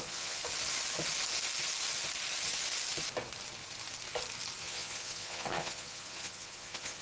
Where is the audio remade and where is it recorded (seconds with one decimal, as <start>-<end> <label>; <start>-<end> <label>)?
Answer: 0.0-0.4 remade; 0.4-4.6 recorded; 4.6-7.0 remade